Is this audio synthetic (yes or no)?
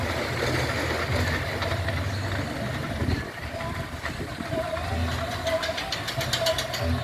no